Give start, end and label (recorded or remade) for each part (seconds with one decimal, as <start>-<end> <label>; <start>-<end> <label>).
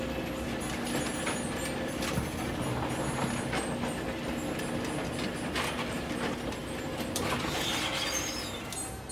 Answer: 0.0-9.1 recorded